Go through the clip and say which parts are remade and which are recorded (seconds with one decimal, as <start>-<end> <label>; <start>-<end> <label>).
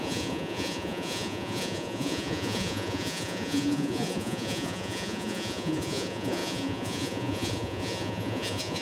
0.0-8.8 remade